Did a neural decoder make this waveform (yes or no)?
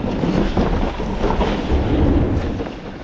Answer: no